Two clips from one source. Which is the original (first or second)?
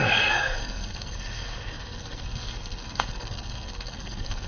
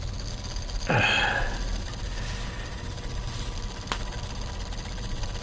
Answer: second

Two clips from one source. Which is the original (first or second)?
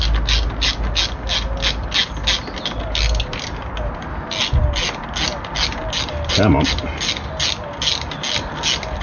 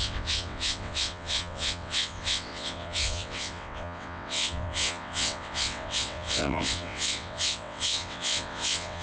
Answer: first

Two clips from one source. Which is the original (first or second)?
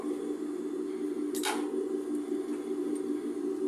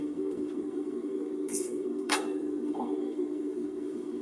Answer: first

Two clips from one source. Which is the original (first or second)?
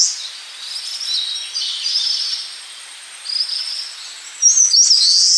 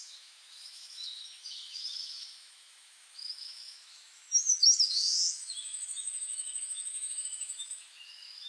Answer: first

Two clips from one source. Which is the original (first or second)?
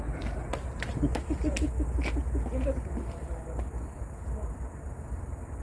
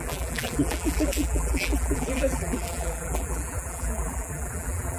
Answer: first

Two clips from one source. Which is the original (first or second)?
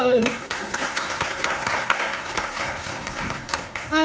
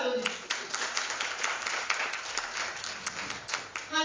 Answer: second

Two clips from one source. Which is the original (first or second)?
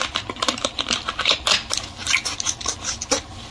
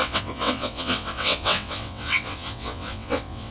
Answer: first